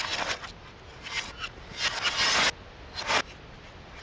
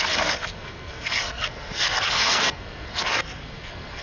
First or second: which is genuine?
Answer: first